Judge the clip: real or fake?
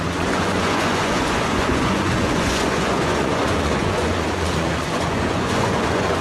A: fake